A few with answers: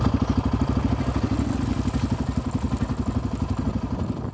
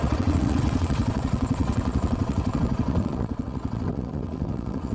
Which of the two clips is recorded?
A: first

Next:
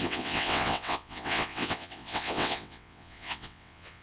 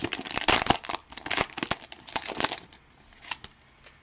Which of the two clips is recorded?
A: second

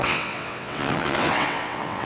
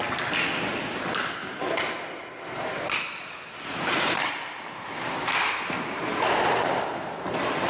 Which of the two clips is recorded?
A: second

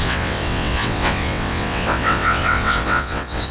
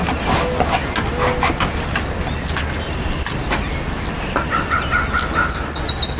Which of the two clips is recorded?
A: second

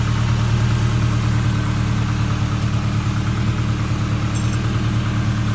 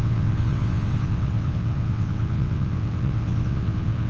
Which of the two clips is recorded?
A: first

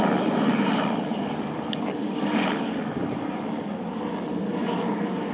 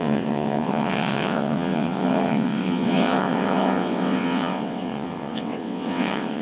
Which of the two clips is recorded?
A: first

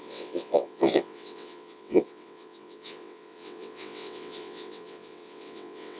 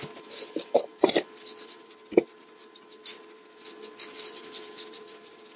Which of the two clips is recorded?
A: second